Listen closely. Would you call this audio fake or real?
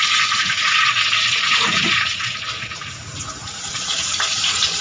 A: fake